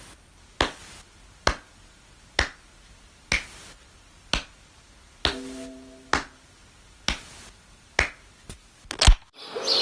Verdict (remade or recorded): recorded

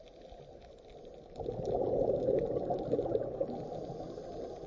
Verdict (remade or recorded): recorded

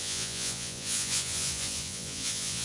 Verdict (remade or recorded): remade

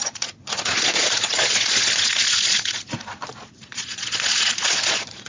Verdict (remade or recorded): remade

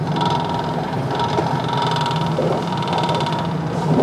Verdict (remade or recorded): recorded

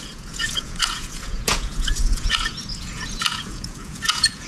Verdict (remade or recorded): remade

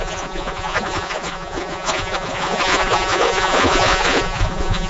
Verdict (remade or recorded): remade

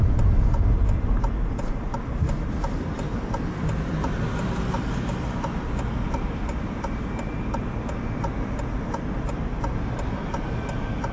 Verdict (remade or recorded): recorded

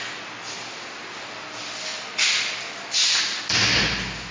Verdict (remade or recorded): recorded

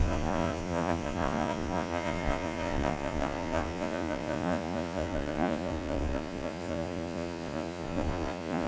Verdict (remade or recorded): remade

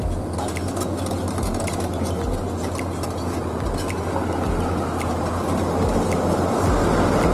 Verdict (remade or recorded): recorded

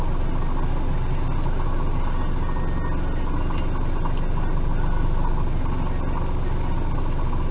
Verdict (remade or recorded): recorded